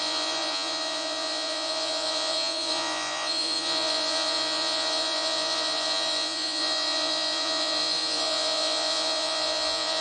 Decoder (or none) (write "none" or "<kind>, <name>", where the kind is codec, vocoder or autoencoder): vocoder, Vocos